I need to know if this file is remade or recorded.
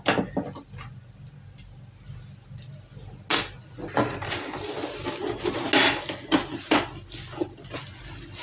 recorded